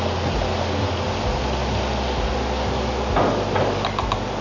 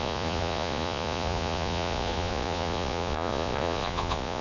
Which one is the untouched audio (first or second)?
first